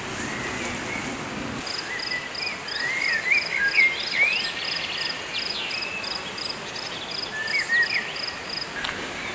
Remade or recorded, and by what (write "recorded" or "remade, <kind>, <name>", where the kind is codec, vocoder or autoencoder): recorded